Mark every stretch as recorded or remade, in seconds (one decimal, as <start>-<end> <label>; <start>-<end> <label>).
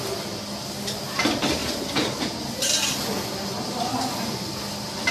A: 0.0-5.1 recorded